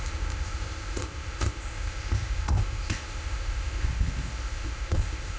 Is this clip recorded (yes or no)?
no